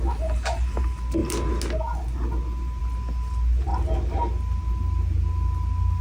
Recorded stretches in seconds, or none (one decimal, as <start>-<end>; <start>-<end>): 0.0-6.0